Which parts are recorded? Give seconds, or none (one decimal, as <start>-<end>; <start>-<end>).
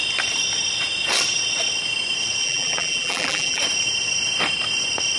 0.0-2.4; 3.6-5.2